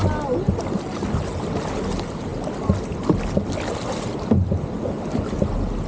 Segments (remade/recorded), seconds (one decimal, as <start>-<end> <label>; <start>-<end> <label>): 0.0-5.9 recorded